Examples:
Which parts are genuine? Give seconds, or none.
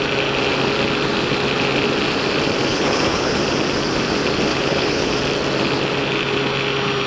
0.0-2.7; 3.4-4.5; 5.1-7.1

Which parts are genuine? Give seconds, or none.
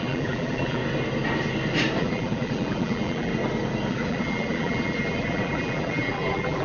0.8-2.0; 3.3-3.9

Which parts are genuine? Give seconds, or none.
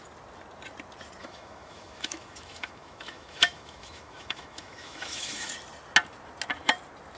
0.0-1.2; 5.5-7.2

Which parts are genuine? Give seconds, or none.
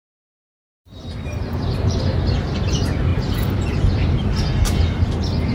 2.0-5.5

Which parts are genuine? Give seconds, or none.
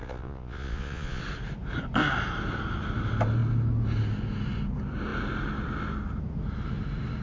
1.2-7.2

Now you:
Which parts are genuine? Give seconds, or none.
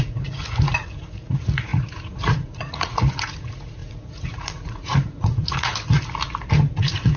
5.7-6.7